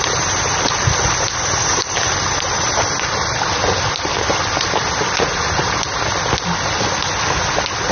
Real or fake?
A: real